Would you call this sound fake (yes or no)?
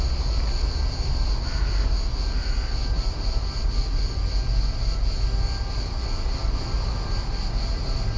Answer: no